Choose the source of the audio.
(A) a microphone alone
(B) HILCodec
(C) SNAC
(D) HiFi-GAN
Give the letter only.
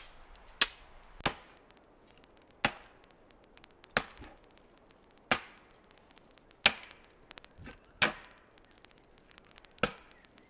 A